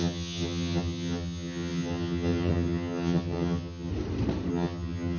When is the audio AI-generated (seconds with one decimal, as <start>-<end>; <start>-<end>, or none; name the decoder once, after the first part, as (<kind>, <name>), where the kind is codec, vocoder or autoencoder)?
0.0-3.9 (vocoder, HiFi-GAN); 4.5-5.2